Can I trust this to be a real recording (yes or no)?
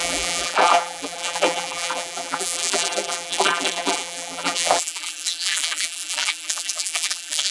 no